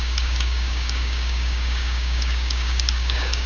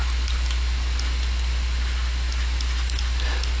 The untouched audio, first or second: second